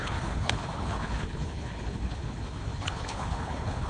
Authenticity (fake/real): fake